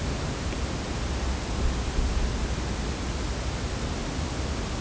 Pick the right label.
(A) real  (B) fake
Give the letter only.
A